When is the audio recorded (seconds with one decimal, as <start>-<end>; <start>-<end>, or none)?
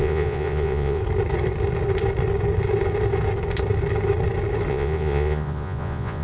1.0-4.7